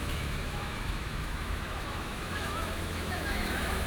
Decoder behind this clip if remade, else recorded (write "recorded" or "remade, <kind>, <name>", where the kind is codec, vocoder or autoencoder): remade, autoencoder, DAC-VAE